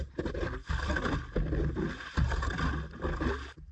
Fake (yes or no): no